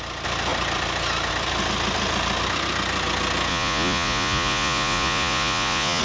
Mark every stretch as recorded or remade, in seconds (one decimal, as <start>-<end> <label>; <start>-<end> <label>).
0.0-3.5 recorded; 3.5-6.0 remade